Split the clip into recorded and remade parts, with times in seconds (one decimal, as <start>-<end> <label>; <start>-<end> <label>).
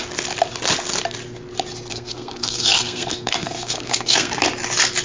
0.0-1.9 recorded; 1.9-4.4 remade; 4.4-5.0 recorded